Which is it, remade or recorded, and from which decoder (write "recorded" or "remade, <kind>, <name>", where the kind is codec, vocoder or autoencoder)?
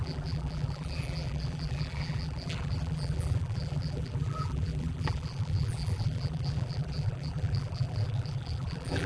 remade, vocoder, BigVGAN v2